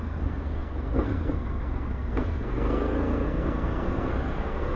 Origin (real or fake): fake